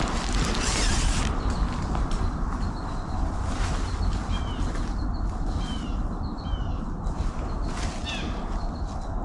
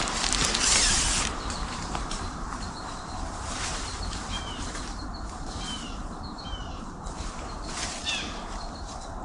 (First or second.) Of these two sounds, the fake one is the second